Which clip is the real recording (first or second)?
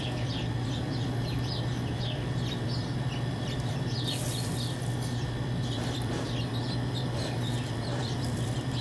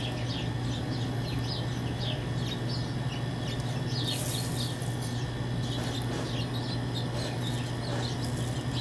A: second